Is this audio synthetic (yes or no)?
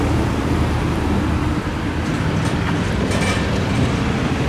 yes